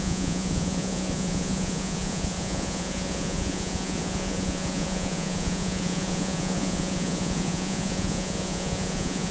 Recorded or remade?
remade